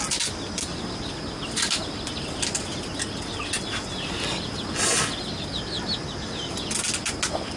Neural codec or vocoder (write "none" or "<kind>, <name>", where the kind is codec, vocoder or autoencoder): none